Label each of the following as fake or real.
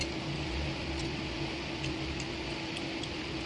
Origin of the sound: real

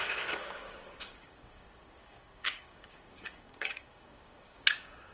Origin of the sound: fake